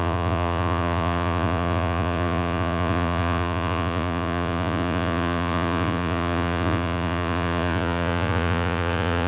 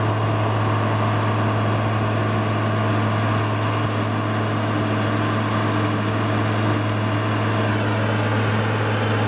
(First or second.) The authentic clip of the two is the second